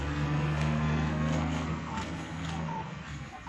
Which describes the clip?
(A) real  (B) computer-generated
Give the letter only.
B